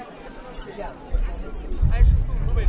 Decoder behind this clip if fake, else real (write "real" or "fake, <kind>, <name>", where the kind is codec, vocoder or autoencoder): real